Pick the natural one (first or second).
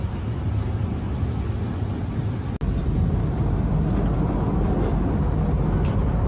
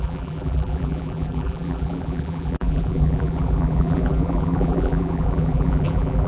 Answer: first